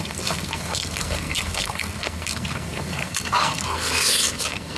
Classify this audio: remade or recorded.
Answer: remade